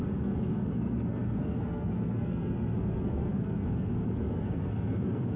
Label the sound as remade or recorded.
remade